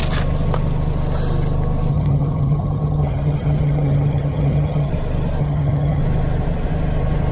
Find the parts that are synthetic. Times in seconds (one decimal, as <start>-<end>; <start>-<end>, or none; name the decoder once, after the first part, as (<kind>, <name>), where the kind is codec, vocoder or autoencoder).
1.9-4.9 (vocoder, HiFi-GAN); 5.4-6.0